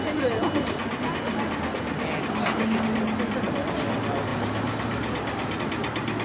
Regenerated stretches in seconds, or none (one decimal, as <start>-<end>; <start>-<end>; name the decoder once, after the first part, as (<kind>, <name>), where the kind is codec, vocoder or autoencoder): none